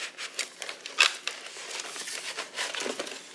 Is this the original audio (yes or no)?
yes